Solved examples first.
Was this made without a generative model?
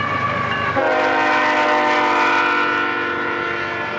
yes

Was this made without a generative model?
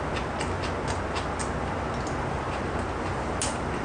yes